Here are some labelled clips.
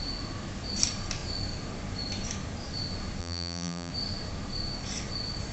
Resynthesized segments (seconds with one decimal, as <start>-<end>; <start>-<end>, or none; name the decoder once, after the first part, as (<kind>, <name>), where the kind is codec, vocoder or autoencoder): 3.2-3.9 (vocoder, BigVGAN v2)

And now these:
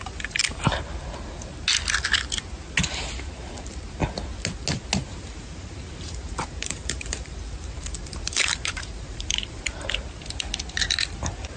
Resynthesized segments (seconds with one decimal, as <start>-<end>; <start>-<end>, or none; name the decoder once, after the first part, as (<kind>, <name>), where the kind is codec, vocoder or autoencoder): 5.1-9.6 (vocoder, BigVGAN v2)

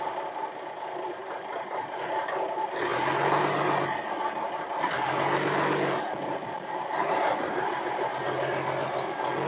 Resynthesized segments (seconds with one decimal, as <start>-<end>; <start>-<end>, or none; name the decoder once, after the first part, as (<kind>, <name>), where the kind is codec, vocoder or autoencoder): 7.0-8.1 (vocoder, BigVGAN v2)

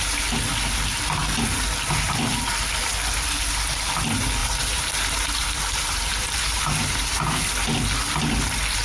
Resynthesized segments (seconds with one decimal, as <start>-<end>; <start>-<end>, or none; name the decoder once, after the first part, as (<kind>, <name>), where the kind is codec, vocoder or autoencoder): 4.4-7.3 (vocoder, BigVGAN v2)

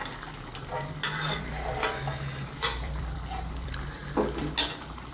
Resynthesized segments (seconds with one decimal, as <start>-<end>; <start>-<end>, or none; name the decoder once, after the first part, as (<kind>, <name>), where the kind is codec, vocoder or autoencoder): 2.4-4.0 (vocoder, BigVGAN v2)

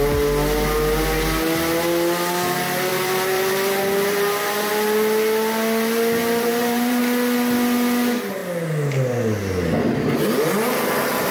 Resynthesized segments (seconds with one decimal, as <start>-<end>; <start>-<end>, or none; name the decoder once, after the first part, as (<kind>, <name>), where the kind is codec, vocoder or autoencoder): 2.9-4.7 (vocoder, BigVGAN v2); 6.2-7.0

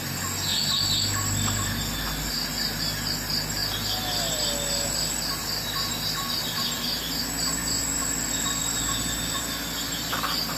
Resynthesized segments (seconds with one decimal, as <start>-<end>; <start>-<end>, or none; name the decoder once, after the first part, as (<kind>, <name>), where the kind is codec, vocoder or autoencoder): none

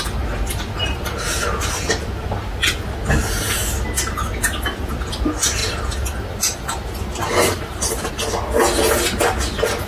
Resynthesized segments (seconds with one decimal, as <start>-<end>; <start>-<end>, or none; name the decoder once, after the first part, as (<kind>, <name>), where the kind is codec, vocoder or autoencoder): 5.6-8.1 (vocoder, BigVGAN v2)